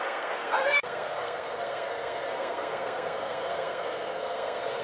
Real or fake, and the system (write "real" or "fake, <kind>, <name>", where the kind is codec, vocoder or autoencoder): fake, codec, SNAC